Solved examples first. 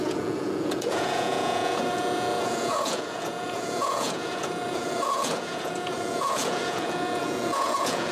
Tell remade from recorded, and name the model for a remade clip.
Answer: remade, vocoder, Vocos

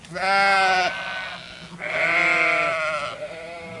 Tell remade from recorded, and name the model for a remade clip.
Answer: recorded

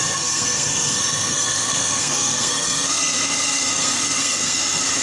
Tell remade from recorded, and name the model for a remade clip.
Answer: remade, codec, SNAC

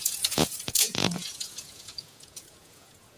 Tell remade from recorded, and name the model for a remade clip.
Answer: remade, vocoder, Vocos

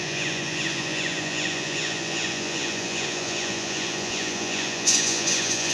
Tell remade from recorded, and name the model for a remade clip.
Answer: remade, vocoder, Vocos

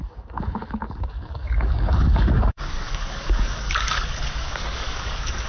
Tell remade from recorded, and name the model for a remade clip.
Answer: remade, codec, DAC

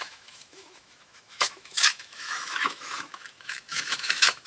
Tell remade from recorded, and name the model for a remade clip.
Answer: remade, autoencoder, DAC-VAE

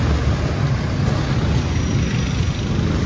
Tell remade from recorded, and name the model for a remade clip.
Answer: recorded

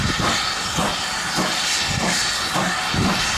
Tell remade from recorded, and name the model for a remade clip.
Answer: recorded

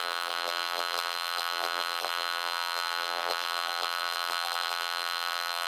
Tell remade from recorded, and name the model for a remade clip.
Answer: remade, vocoder, BigVGAN v2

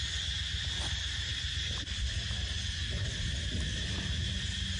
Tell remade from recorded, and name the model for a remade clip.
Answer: recorded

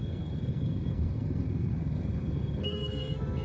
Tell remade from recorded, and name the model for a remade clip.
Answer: remade, codec, SNAC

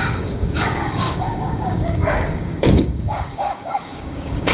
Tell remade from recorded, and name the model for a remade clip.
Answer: remade, codec, DAC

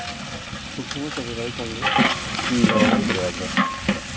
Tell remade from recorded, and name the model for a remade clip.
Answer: recorded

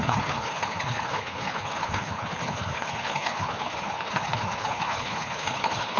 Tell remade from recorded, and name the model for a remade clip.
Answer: remade, codec, HILCodec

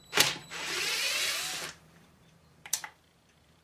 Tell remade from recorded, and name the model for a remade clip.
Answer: remade, vocoder, BigVGAN v2